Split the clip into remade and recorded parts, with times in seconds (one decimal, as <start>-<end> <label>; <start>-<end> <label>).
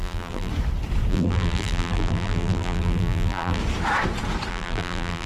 0.0-0.5 remade; 0.5-1.1 recorded; 1.1-3.6 remade; 3.6-4.5 recorded; 4.5-5.3 remade